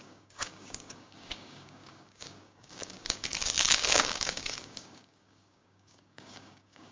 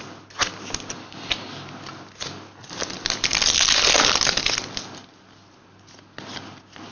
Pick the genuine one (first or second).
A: second